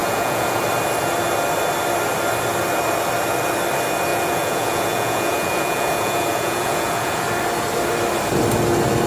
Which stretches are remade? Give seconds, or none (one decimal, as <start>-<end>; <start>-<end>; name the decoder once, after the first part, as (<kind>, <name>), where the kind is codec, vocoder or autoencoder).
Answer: 0.0-0.6 (vocoder, Vocos); 4.1-7.2